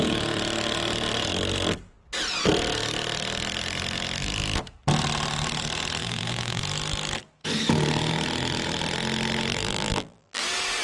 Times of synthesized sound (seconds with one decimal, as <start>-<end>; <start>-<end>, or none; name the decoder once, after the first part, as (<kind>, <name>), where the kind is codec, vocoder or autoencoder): 6.0-6.6 (vocoder, BigVGAN v2); 9.5-10.4